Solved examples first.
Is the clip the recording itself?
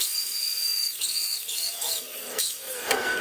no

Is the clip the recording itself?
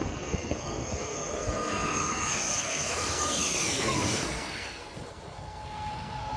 no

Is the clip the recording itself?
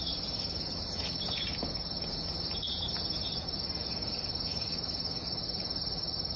no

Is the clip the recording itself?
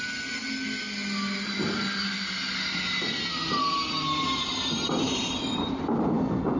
yes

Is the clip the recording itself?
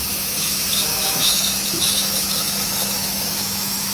no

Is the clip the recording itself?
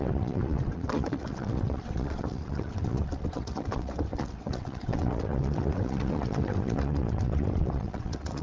no